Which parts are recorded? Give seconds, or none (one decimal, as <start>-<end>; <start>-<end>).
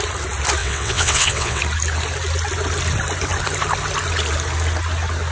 0.0-0.6; 1.6-5.3